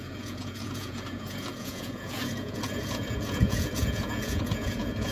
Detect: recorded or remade remade